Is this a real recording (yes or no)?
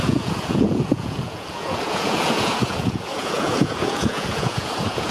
no